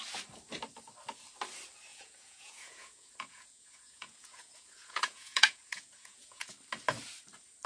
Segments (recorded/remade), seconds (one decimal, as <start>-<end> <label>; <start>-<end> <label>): 0.0-1.9 recorded; 1.9-6.5 remade; 6.5-7.7 recorded